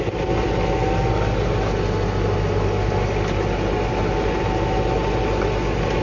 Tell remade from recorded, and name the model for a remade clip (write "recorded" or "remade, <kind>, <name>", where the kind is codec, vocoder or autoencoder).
recorded